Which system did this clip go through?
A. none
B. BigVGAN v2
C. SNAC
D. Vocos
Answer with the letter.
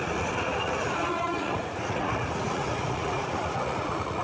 D